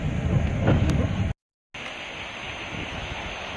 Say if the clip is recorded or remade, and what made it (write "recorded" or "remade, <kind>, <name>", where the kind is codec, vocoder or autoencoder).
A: recorded